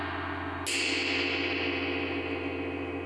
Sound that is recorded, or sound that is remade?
recorded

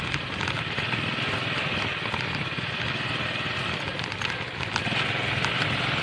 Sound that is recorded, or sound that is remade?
recorded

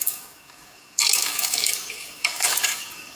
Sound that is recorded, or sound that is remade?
remade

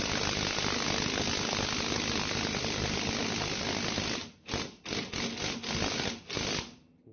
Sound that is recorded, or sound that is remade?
recorded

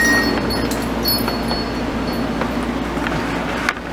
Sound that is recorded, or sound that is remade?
recorded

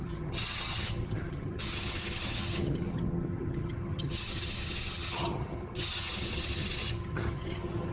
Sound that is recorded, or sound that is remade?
remade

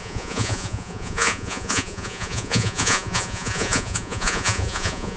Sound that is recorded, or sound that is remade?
remade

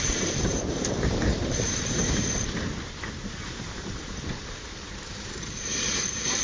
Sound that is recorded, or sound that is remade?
remade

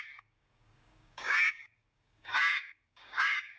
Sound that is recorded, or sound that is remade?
remade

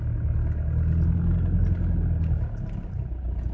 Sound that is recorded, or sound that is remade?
recorded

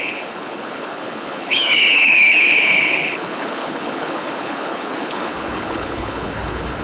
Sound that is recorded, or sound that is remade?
remade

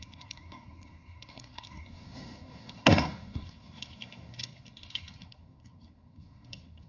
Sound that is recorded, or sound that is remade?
remade